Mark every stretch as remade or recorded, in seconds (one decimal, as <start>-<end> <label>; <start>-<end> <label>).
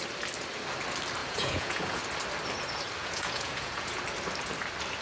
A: 0.0-1.2 recorded; 1.2-2.0 remade; 2.0-3.0 recorded; 3.0-4.0 remade; 4.0-5.0 recorded